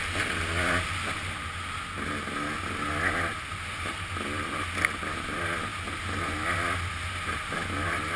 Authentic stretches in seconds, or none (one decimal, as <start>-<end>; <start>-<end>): 0.0-8.2